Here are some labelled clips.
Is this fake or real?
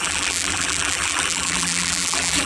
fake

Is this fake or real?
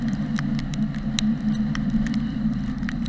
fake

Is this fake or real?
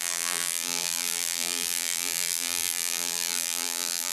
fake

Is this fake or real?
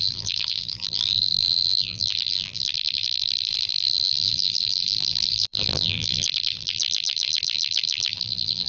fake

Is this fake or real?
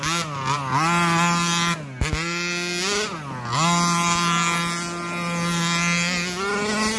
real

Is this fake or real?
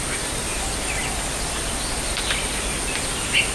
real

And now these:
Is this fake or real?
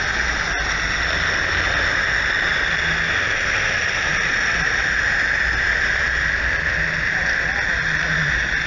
real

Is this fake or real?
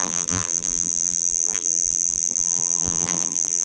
fake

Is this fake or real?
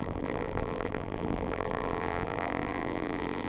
fake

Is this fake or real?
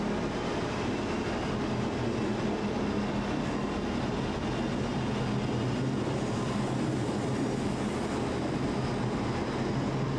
real